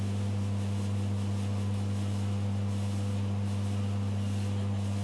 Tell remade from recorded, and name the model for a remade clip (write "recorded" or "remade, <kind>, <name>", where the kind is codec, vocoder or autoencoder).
recorded